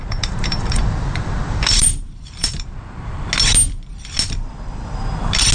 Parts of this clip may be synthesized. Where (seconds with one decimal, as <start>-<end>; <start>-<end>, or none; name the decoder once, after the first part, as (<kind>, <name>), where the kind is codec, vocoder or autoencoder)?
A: 0.0-3.3 (vocoder, BigVGAN v2)